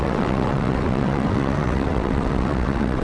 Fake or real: fake